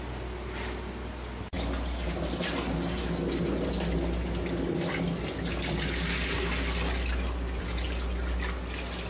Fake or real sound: real